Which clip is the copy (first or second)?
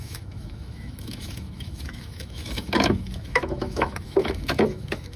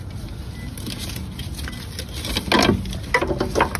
first